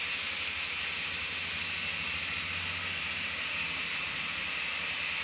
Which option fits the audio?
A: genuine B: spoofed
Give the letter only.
A